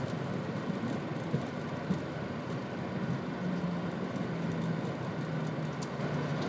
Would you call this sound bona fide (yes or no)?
yes